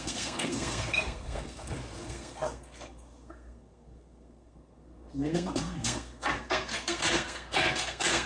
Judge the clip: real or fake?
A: fake